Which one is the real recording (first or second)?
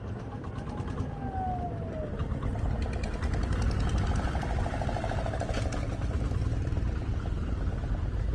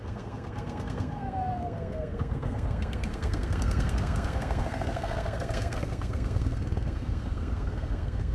first